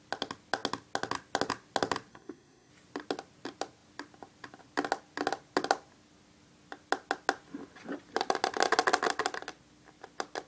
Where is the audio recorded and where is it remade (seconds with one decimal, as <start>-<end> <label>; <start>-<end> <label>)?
0.0-2.1 recorded; 2.1-2.7 remade; 2.7-10.5 recorded